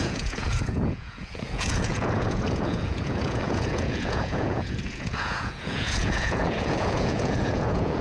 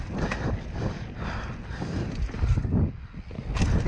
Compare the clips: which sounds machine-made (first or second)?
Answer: first